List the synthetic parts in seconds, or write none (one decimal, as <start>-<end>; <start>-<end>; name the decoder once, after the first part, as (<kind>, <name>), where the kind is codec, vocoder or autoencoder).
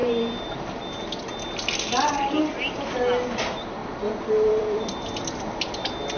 0.0-0.6 (vocoder, BigVGAN v2); 3.8-4.9